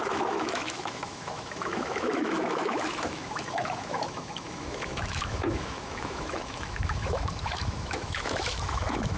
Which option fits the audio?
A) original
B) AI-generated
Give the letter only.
B